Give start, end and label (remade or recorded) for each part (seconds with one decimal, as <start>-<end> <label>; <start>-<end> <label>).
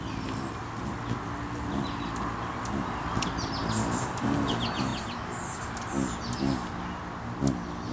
0.0-7.9 recorded